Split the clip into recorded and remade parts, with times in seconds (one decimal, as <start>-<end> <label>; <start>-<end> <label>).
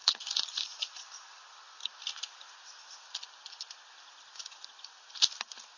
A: 0.0-0.7 remade; 0.7-5.8 recorded